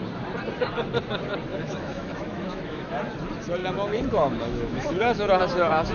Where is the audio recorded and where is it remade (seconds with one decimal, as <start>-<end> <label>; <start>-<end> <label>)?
0.0-1.5 recorded; 1.5-2.9 remade; 2.9-3.6 recorded; 3.6-5.4 remade; 5.4-5.9 recorded